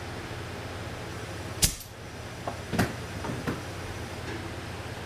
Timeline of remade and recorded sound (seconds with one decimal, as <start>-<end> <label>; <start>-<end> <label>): 0.0-1.1 recorded; 1.1-4.2 remade; 4.2-5.1 recorded